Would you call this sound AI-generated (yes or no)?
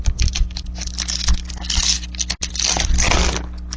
no